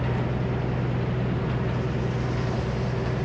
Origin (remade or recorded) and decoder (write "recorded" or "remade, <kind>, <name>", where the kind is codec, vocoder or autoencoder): recorded